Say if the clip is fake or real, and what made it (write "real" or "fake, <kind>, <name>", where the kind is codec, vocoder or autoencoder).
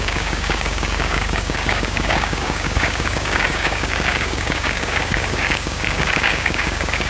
fake, codec, DAC